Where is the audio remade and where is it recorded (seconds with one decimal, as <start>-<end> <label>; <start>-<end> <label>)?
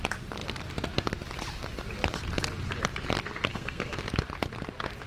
0.0-3.5 recorded; 3.5-4.1 remade; 4.1-5.1 recorded